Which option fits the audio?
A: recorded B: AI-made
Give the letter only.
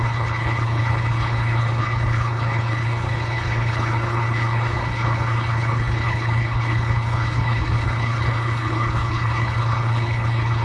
B